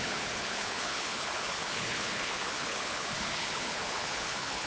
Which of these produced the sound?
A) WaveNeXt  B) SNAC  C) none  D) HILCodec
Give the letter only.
D